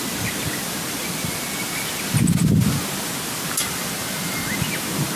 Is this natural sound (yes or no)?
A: yes